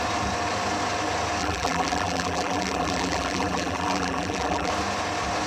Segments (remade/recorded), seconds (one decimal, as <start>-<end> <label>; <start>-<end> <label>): 0.0-1.4 recorded; 1.4-4.7 remade; 4.7-5.5 recorded